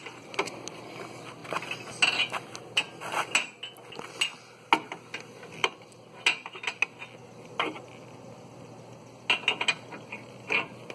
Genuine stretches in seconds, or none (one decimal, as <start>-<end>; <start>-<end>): 0.0-10.9